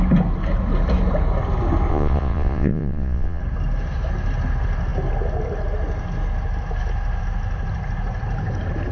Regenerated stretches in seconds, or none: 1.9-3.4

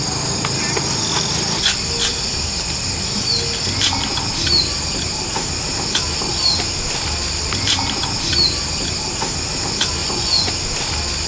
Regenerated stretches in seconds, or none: 10.0-10.5

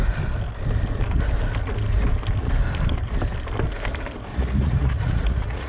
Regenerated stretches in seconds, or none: 4.3-5.7

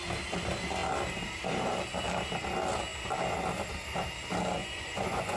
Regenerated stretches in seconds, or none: 4.6-5.4

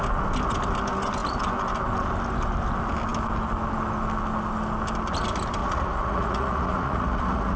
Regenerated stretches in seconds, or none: 5.6-7.6